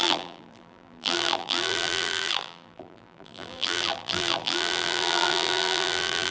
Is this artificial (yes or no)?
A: yes